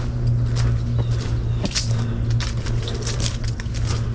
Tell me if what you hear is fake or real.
real